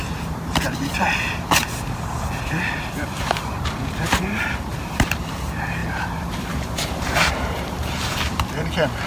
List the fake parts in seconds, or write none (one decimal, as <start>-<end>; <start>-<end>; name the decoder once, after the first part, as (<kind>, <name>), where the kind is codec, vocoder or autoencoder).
0.0-9.1 (vocoder, BigVGAN v2)